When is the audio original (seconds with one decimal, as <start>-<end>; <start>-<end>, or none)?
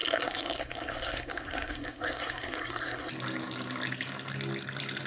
3.1-5.1